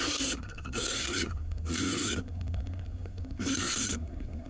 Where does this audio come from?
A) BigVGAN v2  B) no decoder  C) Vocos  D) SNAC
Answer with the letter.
D